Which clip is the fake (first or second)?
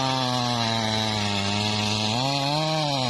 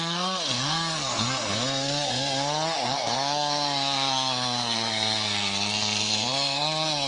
second